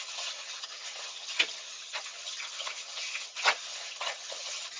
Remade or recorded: remade